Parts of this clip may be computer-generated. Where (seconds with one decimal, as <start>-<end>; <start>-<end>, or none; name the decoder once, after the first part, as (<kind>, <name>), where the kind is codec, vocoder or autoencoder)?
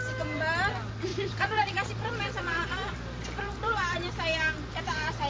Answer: 1.1-3.8 (vocoder, BigVGAN v2); 4.3-5.3